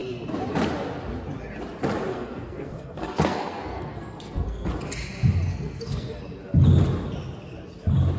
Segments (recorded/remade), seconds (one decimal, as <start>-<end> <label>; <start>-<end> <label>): 0.0-2.1 recorded; 2.1-4.7 remade; 4.7-5.5 recorded; 5.5-6.2 remade; 6.2-8.2 recorded